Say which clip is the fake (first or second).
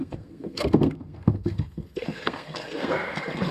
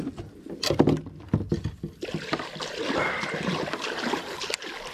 first